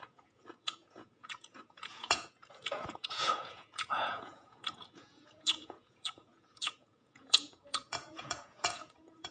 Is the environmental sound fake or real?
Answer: fake